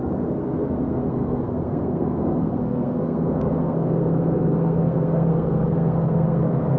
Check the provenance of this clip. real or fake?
fake